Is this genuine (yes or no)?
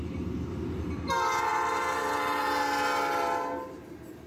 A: yes